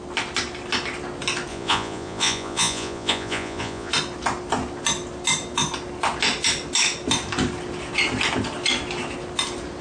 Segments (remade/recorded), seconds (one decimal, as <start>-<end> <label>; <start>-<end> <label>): 0.0-1.5 recorded; 1.5-3.9 remade; 3.9-9.8 recorded